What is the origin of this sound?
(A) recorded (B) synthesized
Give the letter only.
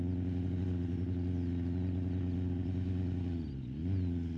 A